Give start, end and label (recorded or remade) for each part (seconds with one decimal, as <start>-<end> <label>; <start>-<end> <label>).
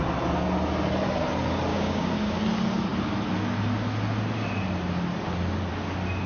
0.0-1.7 recorded; 1.7-2.4 remade; 2.4-6.3 recorded